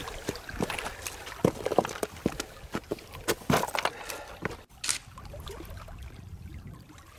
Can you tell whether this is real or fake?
real